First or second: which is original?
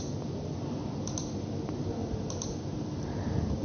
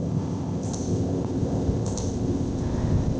first